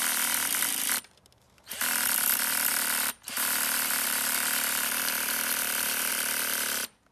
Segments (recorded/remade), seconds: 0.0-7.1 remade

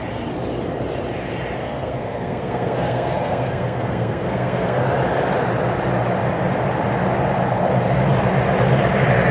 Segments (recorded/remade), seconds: 0.0-1.6 recorded; 1.6-4.8 remade; 4.8-9.3 recorded

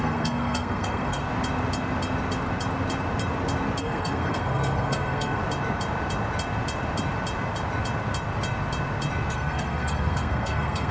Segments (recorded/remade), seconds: 0.0-1.2 remade; 1.2-3.8 recorded; 3.8-5.4 remade; 5.4-9.3 recorded; 9.3-10.9 remade